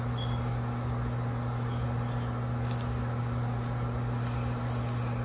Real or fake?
real